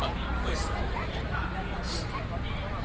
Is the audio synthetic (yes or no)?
no